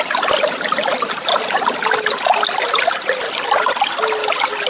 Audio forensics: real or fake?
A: real